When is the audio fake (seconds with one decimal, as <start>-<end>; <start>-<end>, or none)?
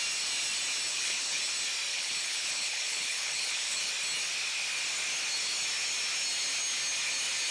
0.9-1.5; 1.9-3.9